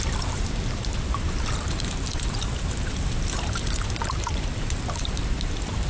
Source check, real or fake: fake